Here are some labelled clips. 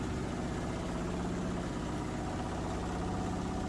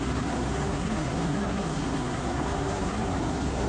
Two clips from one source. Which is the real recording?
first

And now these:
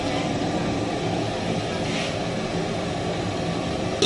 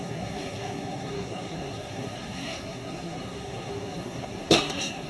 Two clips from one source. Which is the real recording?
first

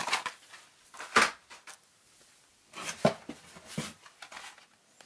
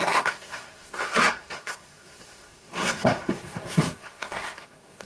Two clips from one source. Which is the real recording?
first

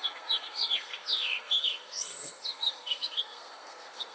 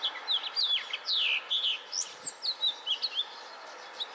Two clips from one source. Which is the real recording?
second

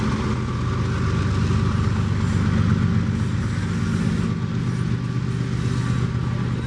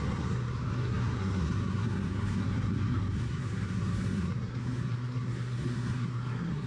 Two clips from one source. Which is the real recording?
first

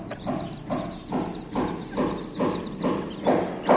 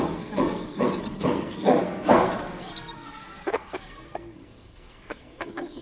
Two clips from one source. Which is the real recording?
first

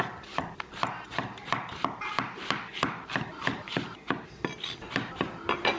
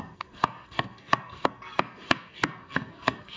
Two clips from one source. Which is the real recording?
first